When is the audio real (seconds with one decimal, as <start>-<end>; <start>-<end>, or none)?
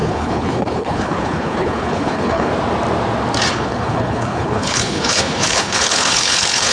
2.5-3.5